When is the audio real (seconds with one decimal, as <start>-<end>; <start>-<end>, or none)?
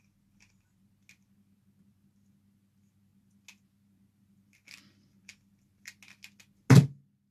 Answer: 0.0-7.3